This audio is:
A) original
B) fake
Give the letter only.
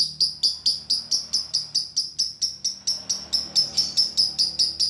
A